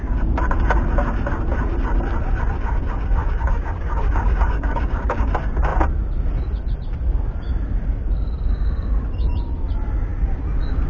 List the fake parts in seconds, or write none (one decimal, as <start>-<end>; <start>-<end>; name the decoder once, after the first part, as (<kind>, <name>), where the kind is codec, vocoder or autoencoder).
3.2-5.3 (codec, DAC)